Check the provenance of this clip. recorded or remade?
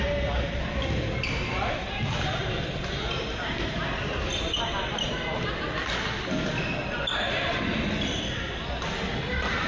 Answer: recorded